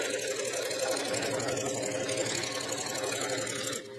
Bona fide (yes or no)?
yes